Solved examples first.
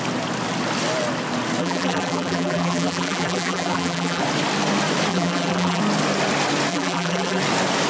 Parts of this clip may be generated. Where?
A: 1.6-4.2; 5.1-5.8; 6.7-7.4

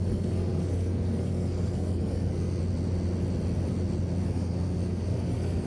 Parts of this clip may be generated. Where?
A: 0.0-2.6; 4.2-5.7

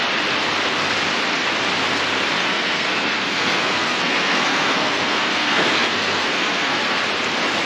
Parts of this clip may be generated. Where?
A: 2.4-7.0

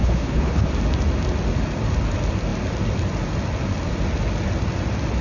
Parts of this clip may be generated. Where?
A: 0.0-0.7

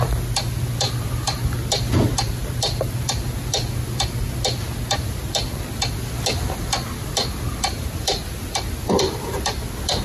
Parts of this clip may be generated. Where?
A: none

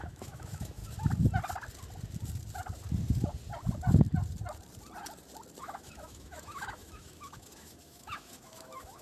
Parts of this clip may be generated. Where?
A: 0.0-0.8; 5.6-9.0

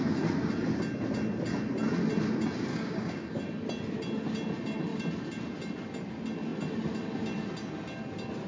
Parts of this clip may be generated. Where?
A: 2.7-3.4

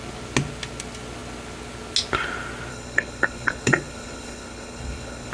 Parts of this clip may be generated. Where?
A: 2.7-5.3